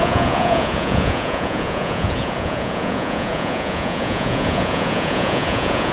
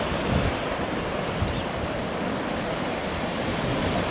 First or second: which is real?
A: second